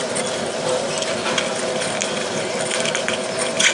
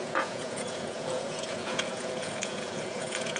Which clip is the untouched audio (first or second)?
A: first